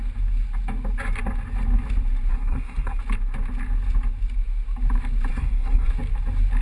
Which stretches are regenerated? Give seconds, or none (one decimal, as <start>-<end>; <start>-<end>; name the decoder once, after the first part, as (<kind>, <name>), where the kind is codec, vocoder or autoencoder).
2.3-3.0 (codec, SNAC); 5.3-5.9